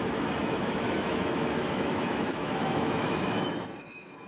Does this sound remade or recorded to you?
remade